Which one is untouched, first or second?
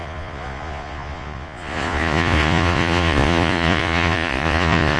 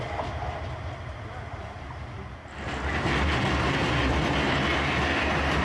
second